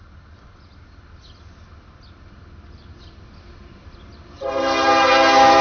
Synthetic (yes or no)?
no